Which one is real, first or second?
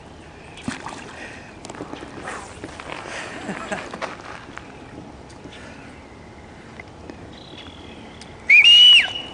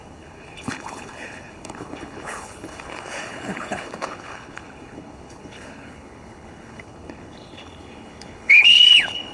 first